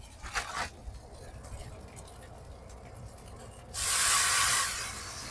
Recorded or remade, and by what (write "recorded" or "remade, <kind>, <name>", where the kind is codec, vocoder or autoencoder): recorded